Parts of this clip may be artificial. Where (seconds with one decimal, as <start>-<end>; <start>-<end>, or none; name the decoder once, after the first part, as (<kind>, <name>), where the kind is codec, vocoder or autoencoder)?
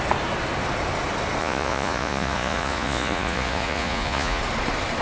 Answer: 1.4-4.4 (vocoder, Vocos)